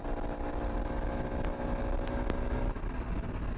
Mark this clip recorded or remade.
recorded